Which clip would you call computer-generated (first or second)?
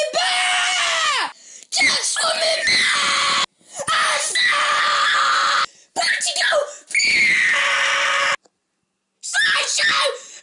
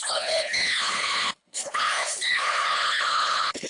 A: second